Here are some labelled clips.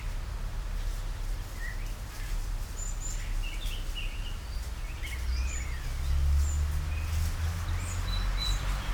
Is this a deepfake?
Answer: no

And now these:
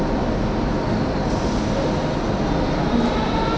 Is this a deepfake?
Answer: no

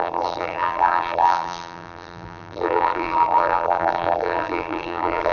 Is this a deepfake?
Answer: yes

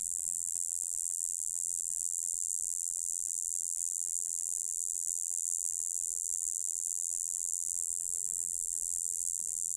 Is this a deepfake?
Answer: yes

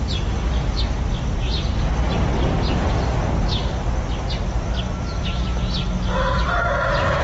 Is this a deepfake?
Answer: no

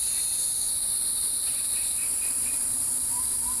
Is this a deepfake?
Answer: yes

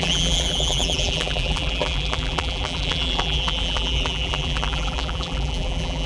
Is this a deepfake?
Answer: yes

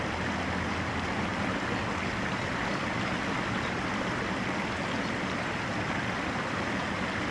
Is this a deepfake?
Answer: no